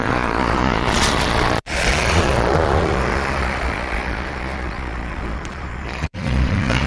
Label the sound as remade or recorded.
remade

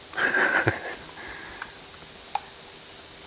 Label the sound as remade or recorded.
recorded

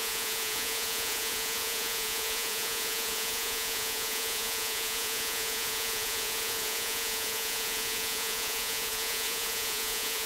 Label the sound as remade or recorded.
remade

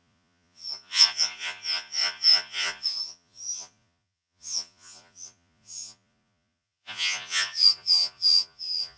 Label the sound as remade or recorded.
remade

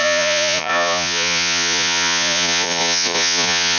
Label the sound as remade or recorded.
remade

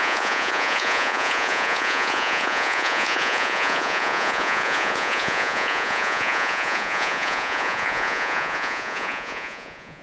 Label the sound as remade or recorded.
remade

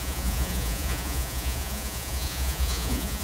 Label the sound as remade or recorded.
remade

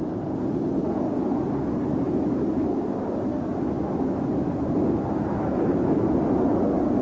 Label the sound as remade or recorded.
recorded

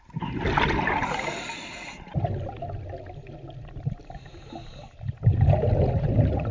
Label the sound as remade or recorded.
recorded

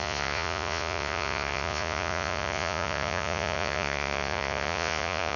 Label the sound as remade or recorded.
remade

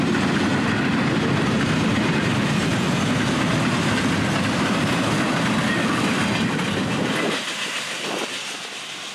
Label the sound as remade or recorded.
recorded